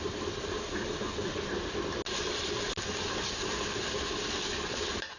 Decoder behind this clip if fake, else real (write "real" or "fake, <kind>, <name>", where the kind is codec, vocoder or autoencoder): real